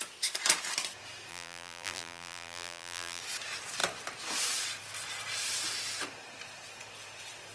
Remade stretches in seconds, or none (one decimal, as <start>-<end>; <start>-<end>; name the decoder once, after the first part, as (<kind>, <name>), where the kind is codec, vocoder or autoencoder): 1.3-3.2 (vocoder, BigVGAN v2)